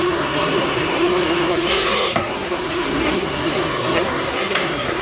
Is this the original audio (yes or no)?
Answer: no